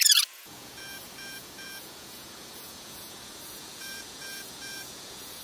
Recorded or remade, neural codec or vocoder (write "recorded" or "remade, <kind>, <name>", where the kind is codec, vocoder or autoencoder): remade, vocoder, Vocos